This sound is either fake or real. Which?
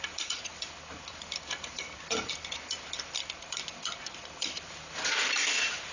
fake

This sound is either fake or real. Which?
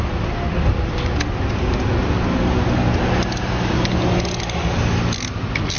real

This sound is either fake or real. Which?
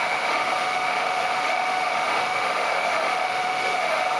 fake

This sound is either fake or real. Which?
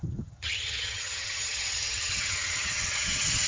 fake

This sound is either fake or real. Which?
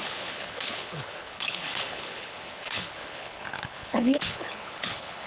fake